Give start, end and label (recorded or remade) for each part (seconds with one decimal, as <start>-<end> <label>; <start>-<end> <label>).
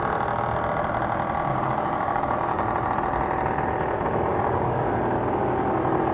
0.0-1.5 recorded; 1.5-2.6 remade; 2.6-4.3 recorded; 4.3-4.9 remade; 4.9-6.1 recorded